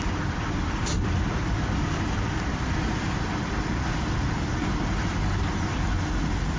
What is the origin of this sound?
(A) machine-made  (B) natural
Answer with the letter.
B